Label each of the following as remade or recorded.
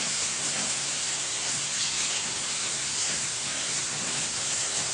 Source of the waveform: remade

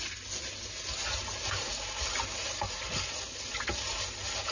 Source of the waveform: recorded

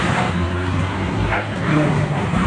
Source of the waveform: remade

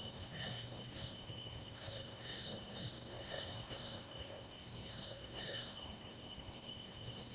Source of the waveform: remade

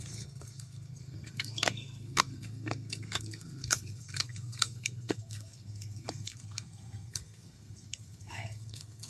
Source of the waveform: remade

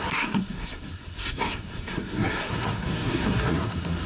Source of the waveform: remade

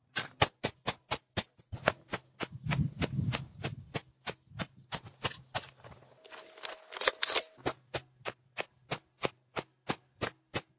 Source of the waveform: recorded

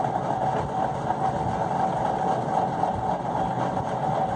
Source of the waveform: recorded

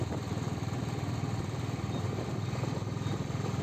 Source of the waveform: recorded